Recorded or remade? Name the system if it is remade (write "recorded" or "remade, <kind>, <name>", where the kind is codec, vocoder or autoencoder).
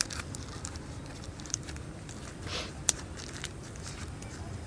remade, vocoder, BigVGAN v2